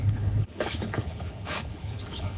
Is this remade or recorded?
remade